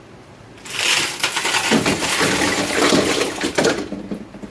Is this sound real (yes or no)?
no